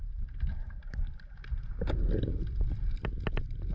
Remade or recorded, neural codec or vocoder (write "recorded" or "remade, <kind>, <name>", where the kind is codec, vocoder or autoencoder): recorded